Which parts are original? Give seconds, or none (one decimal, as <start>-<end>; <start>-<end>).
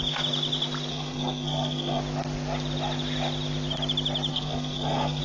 0.0-0.9; 2.0-4.3